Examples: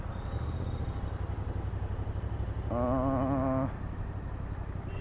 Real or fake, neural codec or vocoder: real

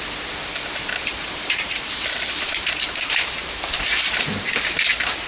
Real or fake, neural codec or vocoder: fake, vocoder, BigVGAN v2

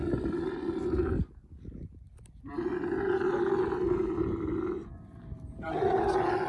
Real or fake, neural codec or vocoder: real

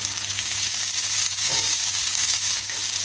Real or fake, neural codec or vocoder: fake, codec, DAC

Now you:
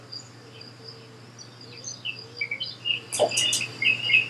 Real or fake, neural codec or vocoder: real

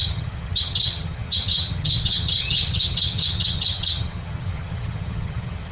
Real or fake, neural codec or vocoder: fake, vocoder, HiFi-GAN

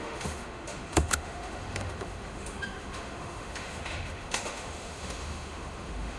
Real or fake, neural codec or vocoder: fake, autoencoder, DAC-VAE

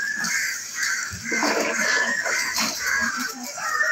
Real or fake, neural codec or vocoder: fake, codec, DAC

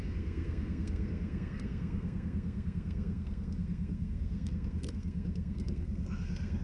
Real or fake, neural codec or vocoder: fake, codec, SNAC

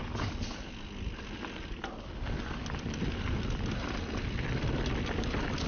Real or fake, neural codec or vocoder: real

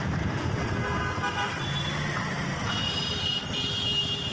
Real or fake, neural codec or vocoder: real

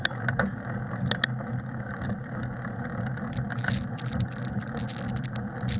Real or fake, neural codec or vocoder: real